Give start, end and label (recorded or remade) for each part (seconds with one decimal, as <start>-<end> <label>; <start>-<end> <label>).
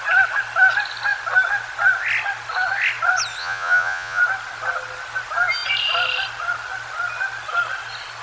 0.0-3.4 recorded; 3.4-4.2 remade; 4.2-8.2 recorded